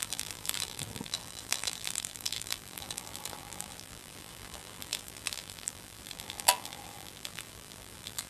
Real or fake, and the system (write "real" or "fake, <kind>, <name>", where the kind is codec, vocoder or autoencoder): fake, vocoder, BigVGAN v2